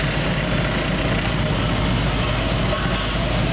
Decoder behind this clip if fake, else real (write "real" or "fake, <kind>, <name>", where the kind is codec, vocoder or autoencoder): real